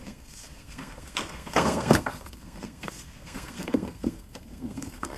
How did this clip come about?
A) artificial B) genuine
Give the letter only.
A